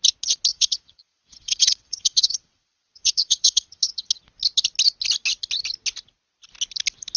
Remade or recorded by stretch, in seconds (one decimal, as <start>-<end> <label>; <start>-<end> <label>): 0.0-0.5 recorded; 0.5-4.2 remade; 4.2-7.2 recorded